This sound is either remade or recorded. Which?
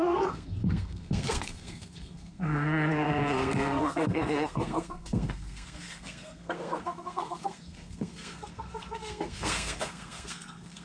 remade